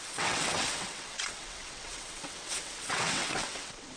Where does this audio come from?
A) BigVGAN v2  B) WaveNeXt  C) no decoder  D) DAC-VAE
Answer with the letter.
B